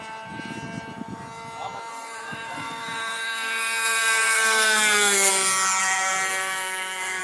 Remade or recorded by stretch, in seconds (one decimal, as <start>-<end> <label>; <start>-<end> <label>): 0.0-1.9 recorded; 1.9-5.3 remade; 5.3-5.8 recorded; 5.8-7.2 remade